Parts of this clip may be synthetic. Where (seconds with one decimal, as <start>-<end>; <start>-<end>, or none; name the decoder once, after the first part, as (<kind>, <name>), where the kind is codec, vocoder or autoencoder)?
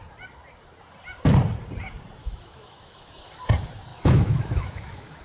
2.2-3.4 (autoencoder, DAC-VAE); 3.9-5.2